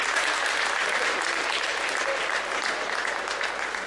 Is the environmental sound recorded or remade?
recorded